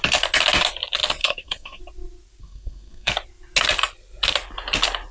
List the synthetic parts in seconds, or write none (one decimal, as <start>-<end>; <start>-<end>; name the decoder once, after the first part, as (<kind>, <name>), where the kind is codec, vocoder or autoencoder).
1.2-1.8 (codec, SNAC); 2.4-3.1